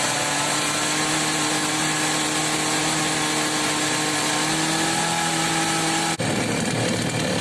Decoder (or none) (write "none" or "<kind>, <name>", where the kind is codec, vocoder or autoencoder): none